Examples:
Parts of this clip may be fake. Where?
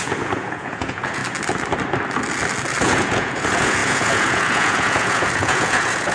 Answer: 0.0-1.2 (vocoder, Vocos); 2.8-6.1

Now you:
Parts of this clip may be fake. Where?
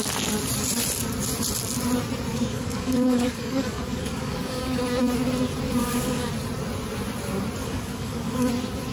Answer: 2.3-4.8 (codec, DAC); 5.8-6.3; 7.6-8.5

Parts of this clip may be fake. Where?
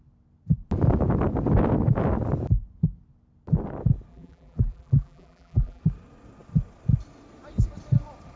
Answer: 4.1-5.8 (vocoder, BigVGAN v2)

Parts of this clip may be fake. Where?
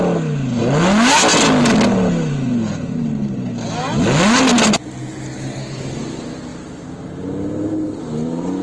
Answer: none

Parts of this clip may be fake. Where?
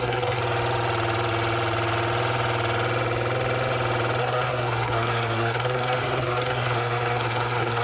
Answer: 0.0-0.4 (codec, SNAC); 4.2-7.8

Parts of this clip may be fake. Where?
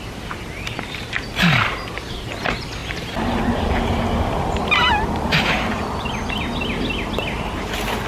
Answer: none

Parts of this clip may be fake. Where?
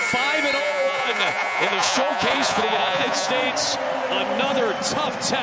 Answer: 0.6-3.3 (vocoder, Vocos)